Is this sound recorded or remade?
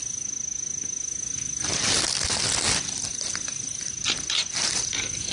recorded